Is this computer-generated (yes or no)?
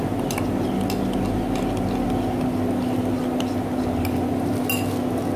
no